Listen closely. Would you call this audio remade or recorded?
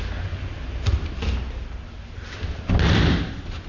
recorded